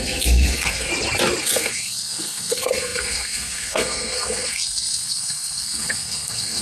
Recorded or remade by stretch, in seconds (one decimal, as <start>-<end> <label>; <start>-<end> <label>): 0.0-0.9 remade; 0.9-1.4 recorded; 1.4-6.6 remade